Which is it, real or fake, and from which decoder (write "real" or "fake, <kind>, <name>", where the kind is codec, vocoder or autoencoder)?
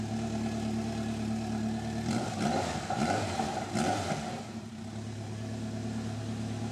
real